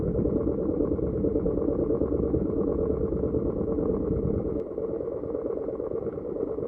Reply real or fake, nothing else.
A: real